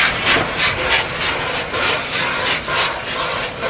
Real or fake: real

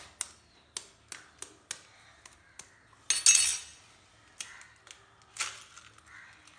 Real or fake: real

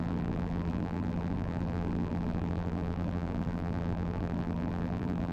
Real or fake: fake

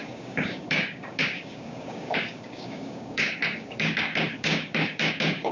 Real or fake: fake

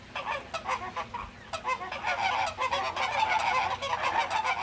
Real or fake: real